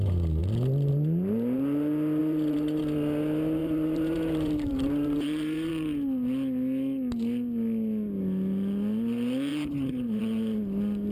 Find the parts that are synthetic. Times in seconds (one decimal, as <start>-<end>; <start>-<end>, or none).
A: 2.2-2.8; 3.6-5.7; 9.5-10.2

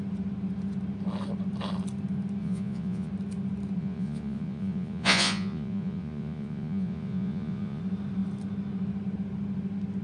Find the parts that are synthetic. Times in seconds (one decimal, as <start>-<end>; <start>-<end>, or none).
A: 2.4-3.1; 3.8-7.8

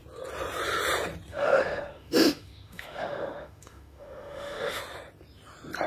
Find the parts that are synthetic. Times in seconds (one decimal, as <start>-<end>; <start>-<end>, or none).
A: 1.3-4.8

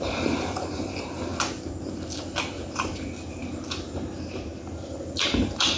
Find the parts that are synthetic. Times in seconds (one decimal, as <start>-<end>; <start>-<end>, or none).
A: 0.0-1.3; 2.5-5.8

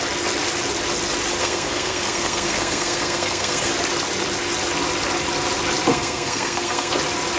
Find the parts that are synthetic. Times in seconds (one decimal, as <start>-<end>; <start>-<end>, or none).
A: 1.4-3.7; 5.9-6.9

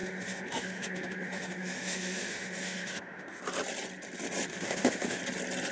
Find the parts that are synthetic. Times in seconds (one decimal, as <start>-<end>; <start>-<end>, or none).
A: 0.0-3.4; 4.5-5.2

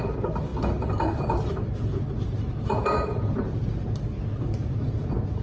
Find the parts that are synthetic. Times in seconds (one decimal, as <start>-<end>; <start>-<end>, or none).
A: none

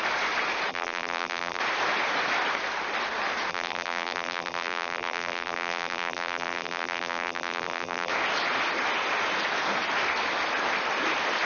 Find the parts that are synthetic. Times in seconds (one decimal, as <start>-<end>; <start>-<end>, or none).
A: 0.7-1.6; 3.5-8.1